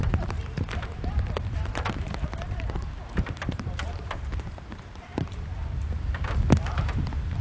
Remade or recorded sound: remade